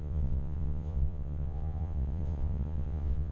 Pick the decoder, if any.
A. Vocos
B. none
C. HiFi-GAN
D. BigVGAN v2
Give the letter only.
A